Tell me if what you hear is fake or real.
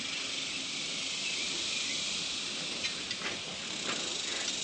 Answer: real